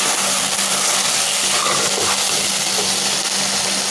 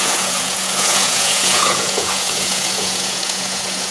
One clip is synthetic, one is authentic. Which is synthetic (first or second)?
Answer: second